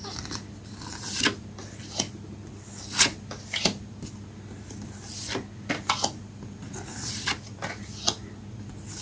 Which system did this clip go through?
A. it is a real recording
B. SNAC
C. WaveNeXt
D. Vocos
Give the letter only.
A